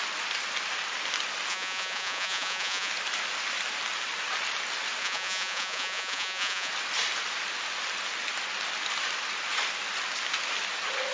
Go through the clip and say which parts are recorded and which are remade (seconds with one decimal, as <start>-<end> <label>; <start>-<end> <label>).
0.0-1.5 recorded; 1.5-2.9 remade; 2.9-5.0 recorded; 5.0-6.7 remade; 6.7-11.1 recorded